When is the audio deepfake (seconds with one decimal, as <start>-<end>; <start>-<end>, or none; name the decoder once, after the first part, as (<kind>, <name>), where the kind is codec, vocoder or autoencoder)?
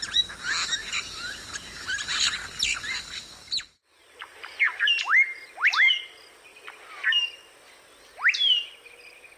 0.8-2.2 (vocoder, BigVGAN v2); 3.8-5.9